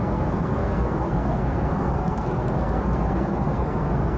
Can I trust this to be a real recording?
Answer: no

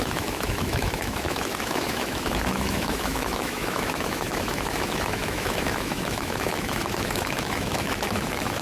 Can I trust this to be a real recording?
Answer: no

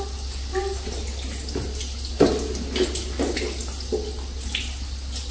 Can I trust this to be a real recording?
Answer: yes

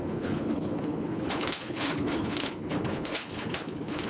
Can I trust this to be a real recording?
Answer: no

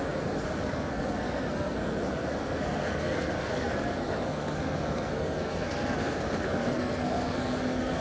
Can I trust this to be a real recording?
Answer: no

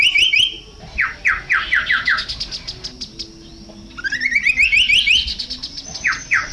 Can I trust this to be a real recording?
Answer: yes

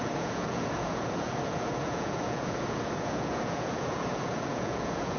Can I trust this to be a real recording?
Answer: no